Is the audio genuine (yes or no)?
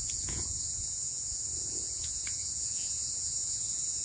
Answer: no